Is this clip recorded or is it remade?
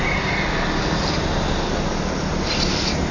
recorded